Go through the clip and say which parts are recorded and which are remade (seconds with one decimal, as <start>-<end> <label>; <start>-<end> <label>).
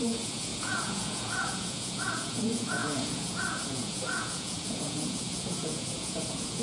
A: 0.0-6.6 remade